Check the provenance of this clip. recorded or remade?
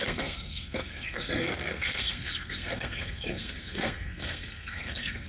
remade